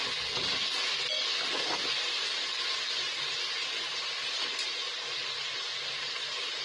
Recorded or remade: recorded